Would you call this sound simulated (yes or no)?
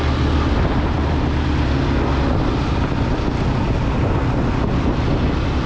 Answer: no